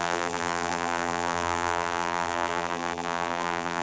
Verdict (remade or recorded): remade